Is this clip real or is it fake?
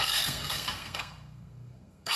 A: fake